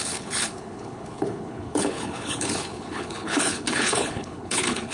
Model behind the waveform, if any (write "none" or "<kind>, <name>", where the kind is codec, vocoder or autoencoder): codec, HILCodec